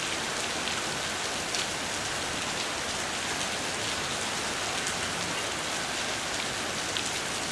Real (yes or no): yes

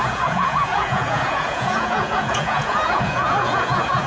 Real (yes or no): no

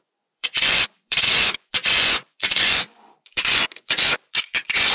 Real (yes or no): no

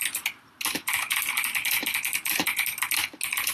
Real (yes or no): yes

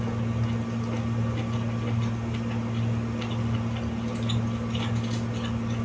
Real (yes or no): yes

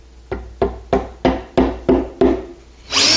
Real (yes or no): yes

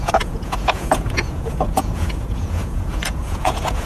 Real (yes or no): no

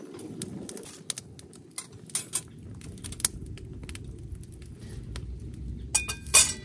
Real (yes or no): yes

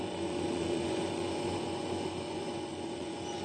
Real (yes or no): no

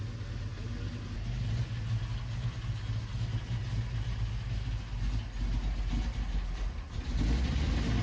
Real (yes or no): yes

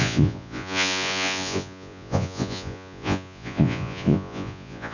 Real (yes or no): no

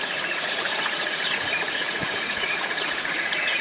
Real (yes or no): no